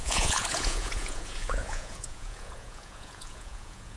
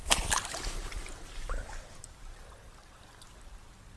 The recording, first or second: second